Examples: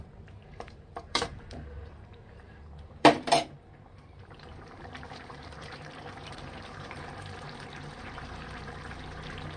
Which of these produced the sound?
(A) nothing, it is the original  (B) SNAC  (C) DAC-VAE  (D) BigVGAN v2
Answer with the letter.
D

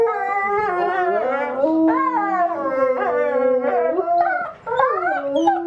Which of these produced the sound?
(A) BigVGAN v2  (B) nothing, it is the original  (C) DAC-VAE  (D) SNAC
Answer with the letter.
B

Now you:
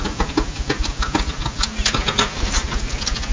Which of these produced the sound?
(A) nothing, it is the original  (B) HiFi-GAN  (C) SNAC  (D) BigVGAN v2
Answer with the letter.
A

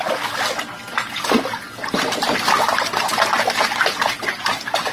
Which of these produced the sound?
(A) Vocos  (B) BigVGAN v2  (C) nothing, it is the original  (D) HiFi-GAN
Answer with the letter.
C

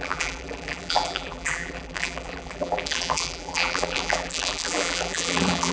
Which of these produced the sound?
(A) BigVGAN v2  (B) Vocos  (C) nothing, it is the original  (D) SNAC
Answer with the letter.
A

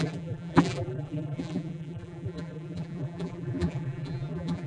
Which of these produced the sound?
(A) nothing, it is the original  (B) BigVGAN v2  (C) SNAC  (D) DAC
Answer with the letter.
B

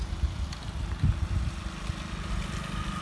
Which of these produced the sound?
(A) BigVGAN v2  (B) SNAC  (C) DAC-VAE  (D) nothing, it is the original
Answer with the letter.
D